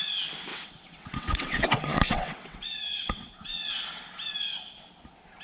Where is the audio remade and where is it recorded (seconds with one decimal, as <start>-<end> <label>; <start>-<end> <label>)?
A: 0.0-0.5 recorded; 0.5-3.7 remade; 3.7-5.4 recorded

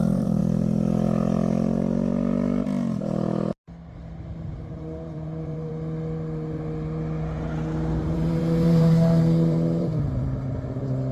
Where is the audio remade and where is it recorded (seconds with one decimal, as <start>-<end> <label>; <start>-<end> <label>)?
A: 0.0-0.4 remade; 0.4-4.2 recorded; 4.2-5.7 remade; 5.7-8.0 recorded; 8.0-11.1 remade

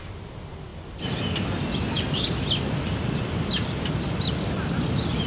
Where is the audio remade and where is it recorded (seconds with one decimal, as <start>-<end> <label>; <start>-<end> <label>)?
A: 0.0-5.3 recorded

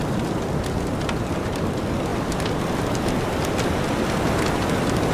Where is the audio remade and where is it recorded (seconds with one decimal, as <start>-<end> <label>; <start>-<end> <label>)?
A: 0.0-5.1 recorded

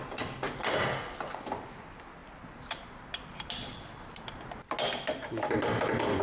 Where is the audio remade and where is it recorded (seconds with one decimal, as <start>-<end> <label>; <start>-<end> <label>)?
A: 0.0-6.2 recorded

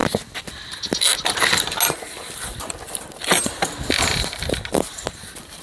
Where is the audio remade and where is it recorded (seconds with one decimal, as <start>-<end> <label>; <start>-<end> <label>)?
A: 0.0-5.6 recorded

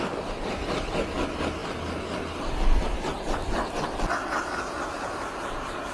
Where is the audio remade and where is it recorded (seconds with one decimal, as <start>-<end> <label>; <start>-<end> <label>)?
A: 0.0-5.9 recorded